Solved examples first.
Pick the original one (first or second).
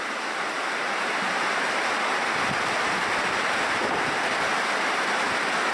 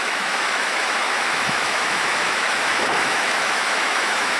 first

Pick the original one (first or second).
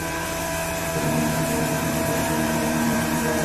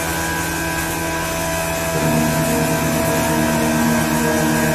second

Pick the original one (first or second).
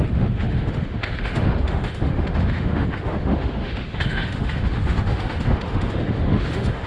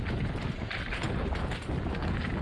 second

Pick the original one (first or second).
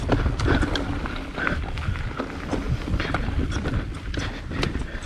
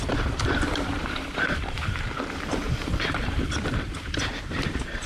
first